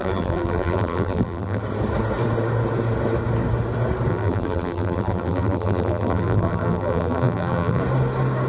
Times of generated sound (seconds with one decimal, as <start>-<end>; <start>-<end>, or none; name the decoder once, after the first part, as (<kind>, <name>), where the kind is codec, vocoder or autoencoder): 0.0-1.6 (vocoder, BigVGAN v2); 4.1-7.8